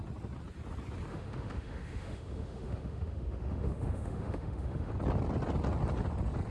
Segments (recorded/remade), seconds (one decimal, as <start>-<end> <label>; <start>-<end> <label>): 0.0-1.1 recorded; 1.1-4.9 remade; 4.9-6.5 recorded